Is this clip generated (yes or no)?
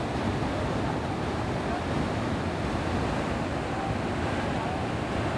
no